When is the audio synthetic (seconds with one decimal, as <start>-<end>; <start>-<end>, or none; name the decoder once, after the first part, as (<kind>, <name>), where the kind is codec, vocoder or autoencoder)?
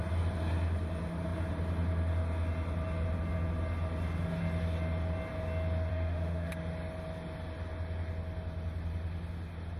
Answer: 5.9-6.5 (autoencoder, DAC-VAE)